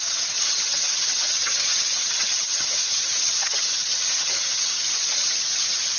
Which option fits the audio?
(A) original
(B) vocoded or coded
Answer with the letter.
B